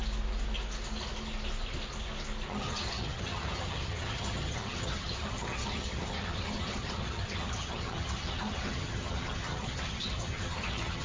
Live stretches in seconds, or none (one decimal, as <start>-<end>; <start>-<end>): 0.0-2.5